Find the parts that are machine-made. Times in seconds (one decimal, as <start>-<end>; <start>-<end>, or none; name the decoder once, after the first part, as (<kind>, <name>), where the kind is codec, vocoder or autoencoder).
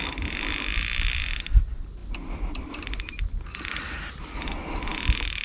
none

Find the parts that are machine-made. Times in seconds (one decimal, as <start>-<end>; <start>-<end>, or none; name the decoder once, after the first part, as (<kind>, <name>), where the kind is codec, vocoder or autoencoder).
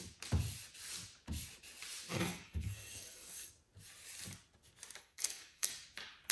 2.1-3.5 (codec, SNAC); 5.0-5.7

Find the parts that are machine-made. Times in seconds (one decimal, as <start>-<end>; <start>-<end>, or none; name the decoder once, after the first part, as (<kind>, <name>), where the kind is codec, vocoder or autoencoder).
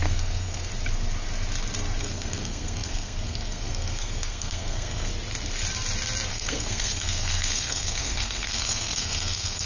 0.0-0.7 (codec, SNAC); 2.0-5.1; 6.3-9.7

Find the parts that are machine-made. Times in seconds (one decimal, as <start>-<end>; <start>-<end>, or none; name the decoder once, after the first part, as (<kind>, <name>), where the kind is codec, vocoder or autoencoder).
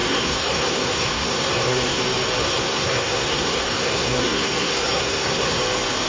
0.0-2.0 (codec, SNAC); 2.4-5.6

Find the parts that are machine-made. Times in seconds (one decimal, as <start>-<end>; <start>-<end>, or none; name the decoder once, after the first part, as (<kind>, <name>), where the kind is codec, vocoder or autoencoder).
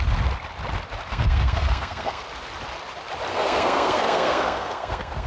1.1-2.2 (codec, SNAC); 3.3-5.3